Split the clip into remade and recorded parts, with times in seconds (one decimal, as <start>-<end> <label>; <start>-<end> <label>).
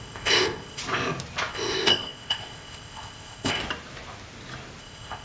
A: 0.0-0.8 remade; 0.8-1.5 recorded; 1.5-3.6 remade; 3.6-4.8 recorded; 4.8-5.2 remade